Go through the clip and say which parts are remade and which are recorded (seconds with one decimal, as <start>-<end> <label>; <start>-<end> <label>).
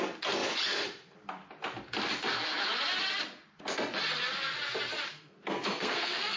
0.0-5.1 recorded; 5.1-6.4 remade